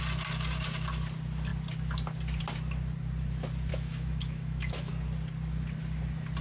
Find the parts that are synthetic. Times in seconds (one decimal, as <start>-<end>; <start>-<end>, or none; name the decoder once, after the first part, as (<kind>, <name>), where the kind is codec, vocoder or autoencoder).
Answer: 3.7-4.9 (autoencoder, DAC-VAE)